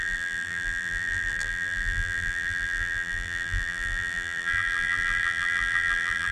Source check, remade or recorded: remade